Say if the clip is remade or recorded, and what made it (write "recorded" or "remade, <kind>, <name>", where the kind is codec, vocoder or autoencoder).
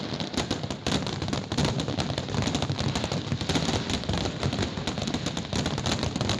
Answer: recorded